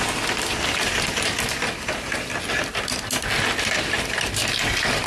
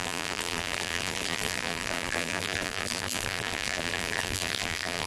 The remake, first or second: second